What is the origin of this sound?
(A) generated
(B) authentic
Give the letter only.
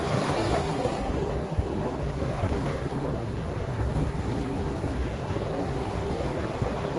A